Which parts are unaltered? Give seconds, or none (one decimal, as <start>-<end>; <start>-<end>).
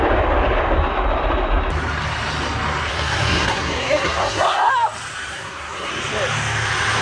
0.0-2.9; 4.7-5.3; 5.9-7.0